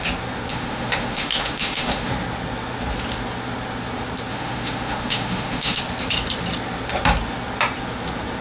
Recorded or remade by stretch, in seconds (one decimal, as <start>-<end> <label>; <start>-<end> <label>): 0.0-0.5 recorded; 0.5-2.1 remade; 2.1-4.3 recorded; 4.3-5.8 remade; 5.8-8.4 recorded